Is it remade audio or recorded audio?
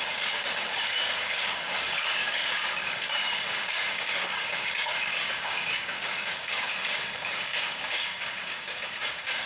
remade